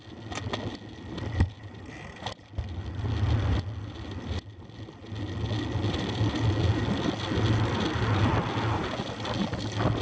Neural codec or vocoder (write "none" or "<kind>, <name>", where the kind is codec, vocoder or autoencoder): none